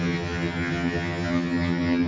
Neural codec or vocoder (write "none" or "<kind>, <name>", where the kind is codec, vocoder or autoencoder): vocoder, HiFi-GAN